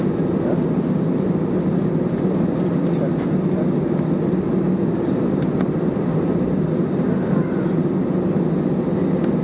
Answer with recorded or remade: recorded